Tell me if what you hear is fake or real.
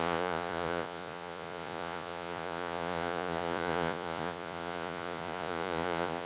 fake